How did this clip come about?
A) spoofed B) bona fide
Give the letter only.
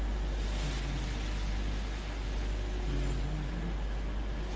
B